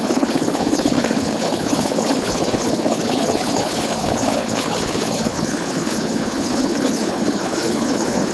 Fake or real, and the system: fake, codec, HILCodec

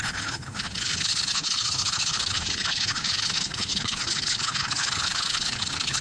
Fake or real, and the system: fake, codec, HILCodec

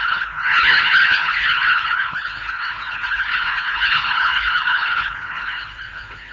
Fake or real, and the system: fake, codec, HILCodec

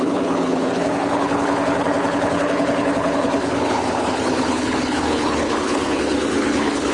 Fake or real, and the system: fake, codec, HILCodec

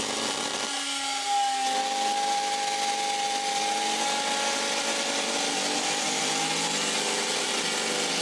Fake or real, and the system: real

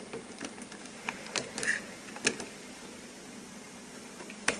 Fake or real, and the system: real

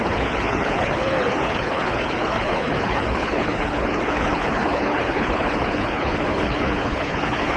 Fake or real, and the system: fake, codec, HILCodec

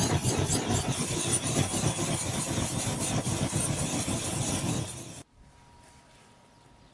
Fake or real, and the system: real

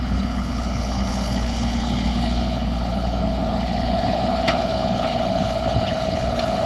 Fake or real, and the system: fake, codec, HILCodec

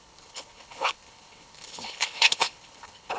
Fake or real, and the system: fake, codec, HILCodec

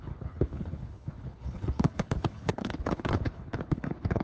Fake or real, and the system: fake, codec, HILCodec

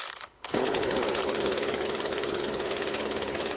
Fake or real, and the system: fake, codec, HILCodec